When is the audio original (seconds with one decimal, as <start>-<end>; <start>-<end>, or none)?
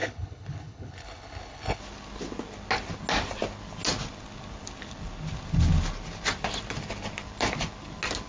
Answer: 1.8-8.3